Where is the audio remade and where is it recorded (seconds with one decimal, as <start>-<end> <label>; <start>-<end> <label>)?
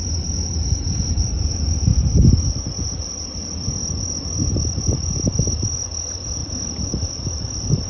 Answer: 0.0-6.4 remade; 6.4-7.1 recorded; 7.1-7.9 remade